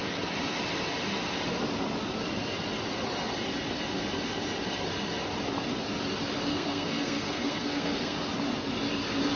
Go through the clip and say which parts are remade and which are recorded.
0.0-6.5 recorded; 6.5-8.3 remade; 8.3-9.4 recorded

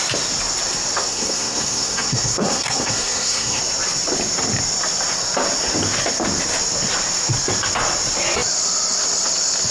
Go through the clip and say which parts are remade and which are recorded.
0.0-1.1 recorded; 1.1-3.6 remade; 3.6-9.7 recorded

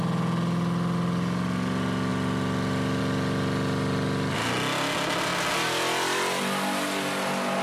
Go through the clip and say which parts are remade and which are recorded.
0.0-7.6 recorded

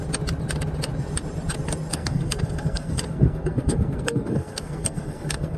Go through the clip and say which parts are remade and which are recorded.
0.0-1.9 recorded; 1.9-5.6 remade

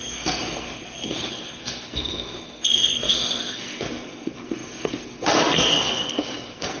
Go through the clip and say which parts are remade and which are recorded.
0.0-6.8 remade

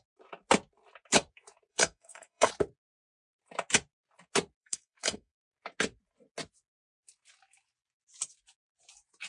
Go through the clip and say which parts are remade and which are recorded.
0.0-1.7 recorded; 1.7-2.5 remade; 2.5-4.6 recorded; 4.6-5.4 remade; 5.4-9.3 recorded

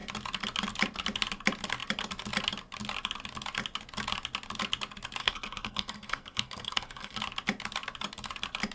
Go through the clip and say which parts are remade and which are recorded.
0.0-5.2 recorded; 5.2-7.2 remade; 7.2-8.7 recorded

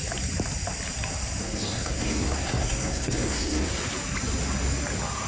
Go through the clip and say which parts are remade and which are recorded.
0.0-1.4 recorded; 1.4-3.7 remade; 3.7-5.3 recorded